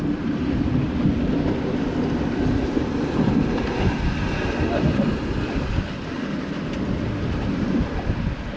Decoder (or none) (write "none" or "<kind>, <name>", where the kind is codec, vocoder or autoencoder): none